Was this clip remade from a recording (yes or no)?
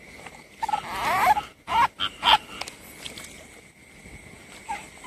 no